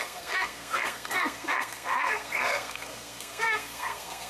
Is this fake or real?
fake